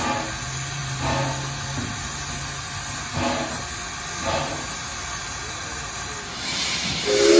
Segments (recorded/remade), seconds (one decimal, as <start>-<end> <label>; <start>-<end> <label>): 0.0-7.4 recorded